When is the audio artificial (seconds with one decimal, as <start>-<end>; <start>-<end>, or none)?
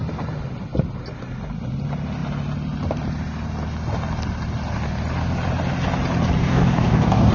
6.4-7.3